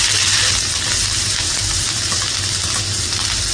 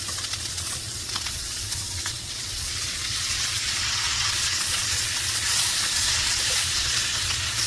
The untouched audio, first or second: first